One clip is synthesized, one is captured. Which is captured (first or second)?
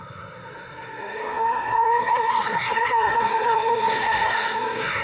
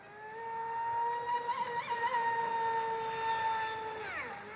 second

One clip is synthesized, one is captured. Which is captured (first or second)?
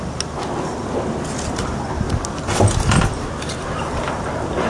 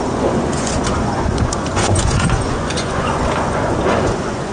first